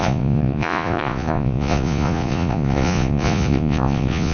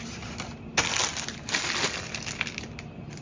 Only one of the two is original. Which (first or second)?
second